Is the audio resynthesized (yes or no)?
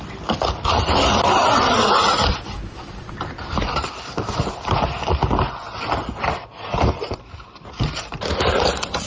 no